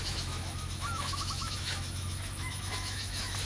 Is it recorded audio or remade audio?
remade